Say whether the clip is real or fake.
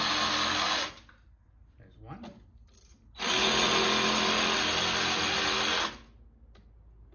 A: real